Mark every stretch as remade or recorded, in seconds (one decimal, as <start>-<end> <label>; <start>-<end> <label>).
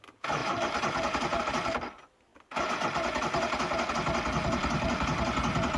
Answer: 0.0-0.4 recorded; 0.4-1.4 remade; 1.4-5.8 recorded